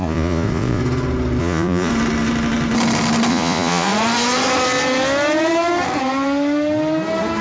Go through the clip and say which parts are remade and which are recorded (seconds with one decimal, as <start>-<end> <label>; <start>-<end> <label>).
0.0-0.8 remade; 0.8-1.4 recorded; 1.4-1.9 remade; 1.9-3.3 recorded; 3.3-3.9 remade; 3.9-7.4 recorded